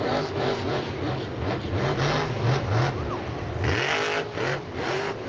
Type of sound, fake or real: real